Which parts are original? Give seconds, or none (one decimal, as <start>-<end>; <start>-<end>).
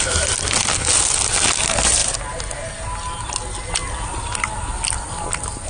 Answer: 0.0-5.7